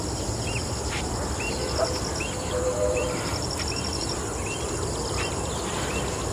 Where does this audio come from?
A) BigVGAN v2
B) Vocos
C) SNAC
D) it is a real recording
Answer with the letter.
A